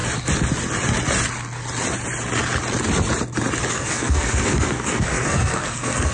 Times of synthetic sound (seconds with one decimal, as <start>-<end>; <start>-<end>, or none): 3.7-6.1